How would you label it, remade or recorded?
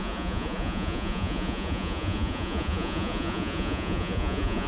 remade